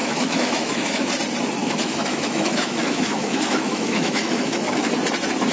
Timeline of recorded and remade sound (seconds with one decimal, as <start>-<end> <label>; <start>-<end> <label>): 0.0-1.1 remade; 1.1-1.6 recorded; 1.6-4.9 remade; 4.9-5.5 recorded